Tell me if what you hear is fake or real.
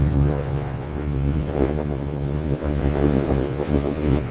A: fake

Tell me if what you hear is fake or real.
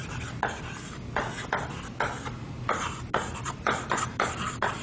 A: real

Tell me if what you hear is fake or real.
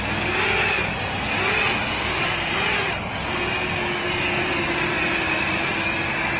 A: real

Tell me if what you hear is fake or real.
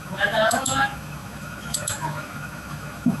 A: fake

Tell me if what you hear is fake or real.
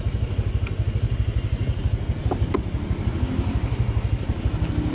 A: real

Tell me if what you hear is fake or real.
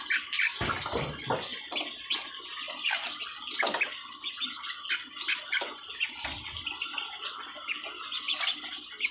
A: real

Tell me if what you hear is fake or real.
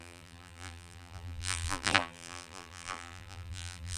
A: fake